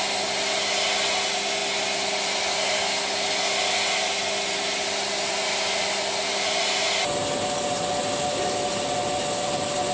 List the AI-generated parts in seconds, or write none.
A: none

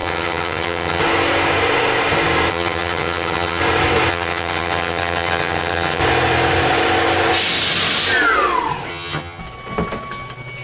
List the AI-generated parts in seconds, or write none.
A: 0.0-1.0 (vocoder, HiFi-GAN); 2.5-3.6; 4.1-6.0; 8.9-9.4

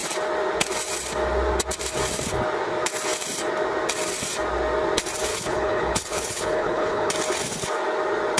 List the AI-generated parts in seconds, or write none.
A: 5.3-7.1 (codec, HILCodec)

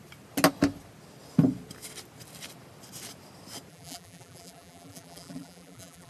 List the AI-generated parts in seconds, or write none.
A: 3.7-6.1 (vocoder, BigVGAN v2)

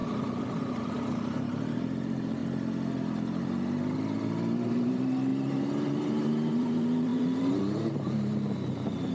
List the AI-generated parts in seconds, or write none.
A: 0.8-2.4 (vocoder, BigVGAN v2); 4.7-5.3; 6.6-9.1

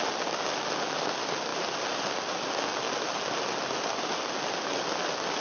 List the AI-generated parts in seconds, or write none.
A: none

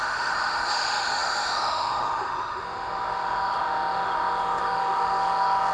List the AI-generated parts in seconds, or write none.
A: 0.0-5.7 (autoencoder, DAC-VAE)

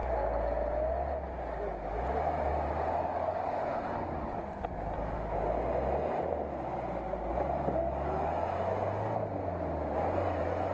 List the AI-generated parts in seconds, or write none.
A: none